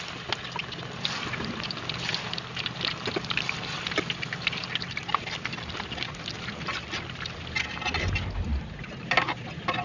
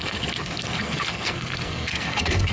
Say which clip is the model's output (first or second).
second